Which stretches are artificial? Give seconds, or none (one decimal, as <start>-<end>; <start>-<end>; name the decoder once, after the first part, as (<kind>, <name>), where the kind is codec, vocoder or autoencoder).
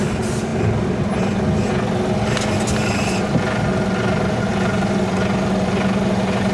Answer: 4.5-5.7 (vocoder, BigVGAN v2)